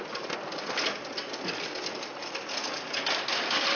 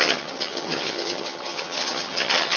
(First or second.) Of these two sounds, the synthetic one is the second